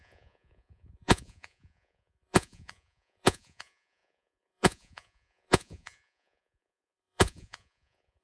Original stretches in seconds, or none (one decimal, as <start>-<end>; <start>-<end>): none